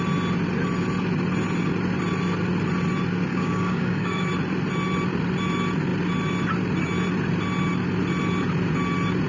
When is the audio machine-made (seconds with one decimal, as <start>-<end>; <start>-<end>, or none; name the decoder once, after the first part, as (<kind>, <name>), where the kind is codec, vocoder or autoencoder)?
3.3-4.3 (codec, DAC)